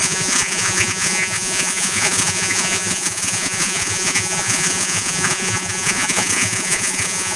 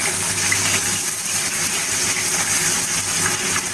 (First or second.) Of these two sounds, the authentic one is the second